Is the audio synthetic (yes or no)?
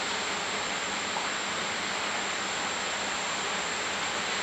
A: no